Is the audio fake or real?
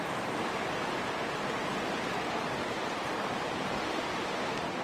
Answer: real